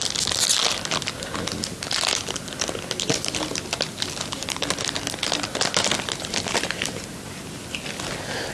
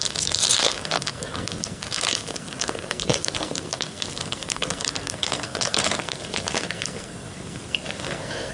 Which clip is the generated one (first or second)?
second